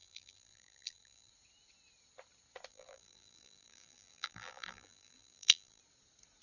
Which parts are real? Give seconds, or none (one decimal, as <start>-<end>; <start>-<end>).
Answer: 1.3-2.7; 5.8-6.4